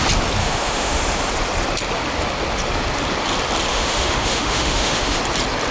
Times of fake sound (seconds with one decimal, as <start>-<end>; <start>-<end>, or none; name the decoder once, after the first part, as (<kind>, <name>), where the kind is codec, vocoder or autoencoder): 0.4-1.0 (autoencoder, DAC-VAE); 3.7-5.2